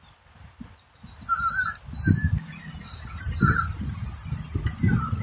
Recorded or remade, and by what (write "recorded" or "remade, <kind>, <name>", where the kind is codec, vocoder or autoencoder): recorded